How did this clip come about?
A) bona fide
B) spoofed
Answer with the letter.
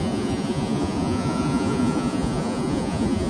B